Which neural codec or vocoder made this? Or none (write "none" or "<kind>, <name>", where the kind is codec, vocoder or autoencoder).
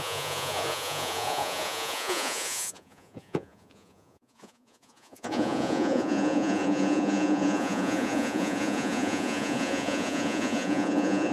vocoder, Vocos